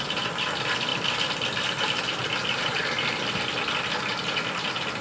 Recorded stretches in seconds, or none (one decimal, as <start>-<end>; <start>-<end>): 0.0-0.9; 3.4-4.1